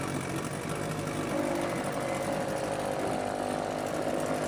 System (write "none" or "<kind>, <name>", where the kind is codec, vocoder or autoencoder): none